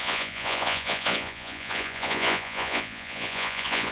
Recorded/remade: remade